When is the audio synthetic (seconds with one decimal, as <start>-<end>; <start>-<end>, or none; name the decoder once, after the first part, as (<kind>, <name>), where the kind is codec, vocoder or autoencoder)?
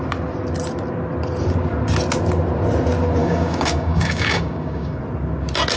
3.2-5.0 (codec, DAC)